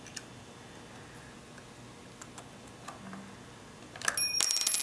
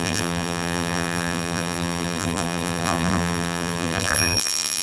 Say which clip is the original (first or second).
first